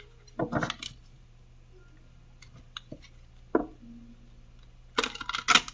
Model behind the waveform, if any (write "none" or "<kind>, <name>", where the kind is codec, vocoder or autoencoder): none